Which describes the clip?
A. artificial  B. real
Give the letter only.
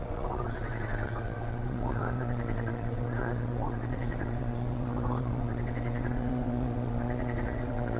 A